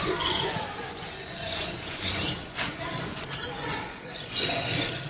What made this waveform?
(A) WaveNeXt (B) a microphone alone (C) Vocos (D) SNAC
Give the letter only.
C